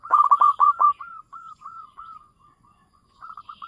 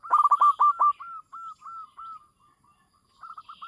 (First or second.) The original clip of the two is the second